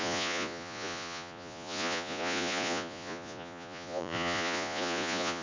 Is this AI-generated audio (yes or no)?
yes